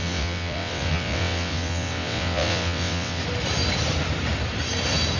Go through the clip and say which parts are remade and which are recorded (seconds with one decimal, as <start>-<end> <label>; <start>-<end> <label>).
0.0-3.2 remade; 3.2-5.2 recorded